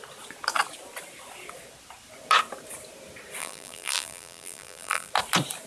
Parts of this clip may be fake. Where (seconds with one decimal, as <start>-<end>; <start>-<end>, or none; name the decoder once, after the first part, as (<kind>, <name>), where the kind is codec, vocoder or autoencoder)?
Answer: 3.4-5.1 (vocoder, BigVGAN v2)